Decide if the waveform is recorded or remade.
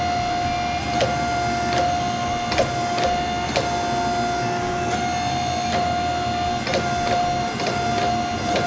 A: recorded